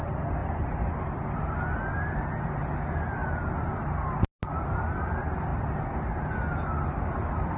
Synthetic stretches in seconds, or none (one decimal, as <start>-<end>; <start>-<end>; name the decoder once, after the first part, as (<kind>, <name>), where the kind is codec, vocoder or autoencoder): none